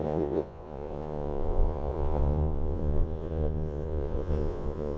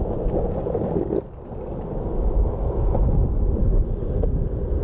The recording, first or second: second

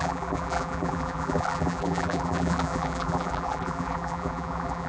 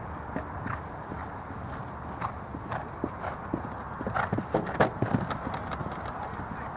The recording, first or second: second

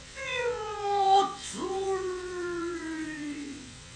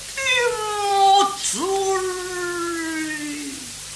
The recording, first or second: second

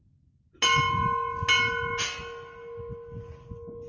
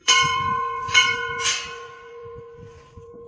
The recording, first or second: first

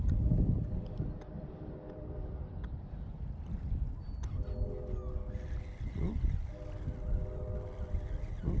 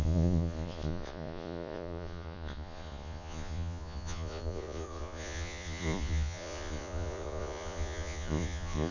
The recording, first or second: first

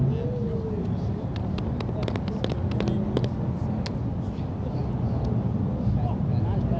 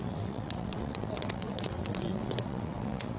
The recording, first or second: first